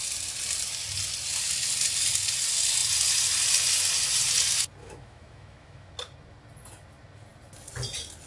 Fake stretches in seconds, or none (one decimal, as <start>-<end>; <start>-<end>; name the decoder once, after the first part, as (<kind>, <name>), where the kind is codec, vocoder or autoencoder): 4.8-5.9 (autoencoder, DAC-VAE)